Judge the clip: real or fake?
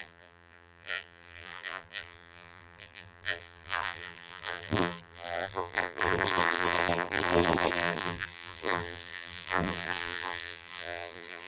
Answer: fake